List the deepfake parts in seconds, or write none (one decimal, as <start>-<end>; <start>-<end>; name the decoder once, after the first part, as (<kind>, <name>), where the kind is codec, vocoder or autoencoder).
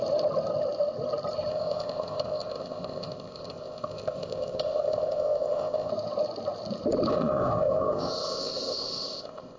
1.5-5.9 (codec, ZipCodec); 7.1-9.6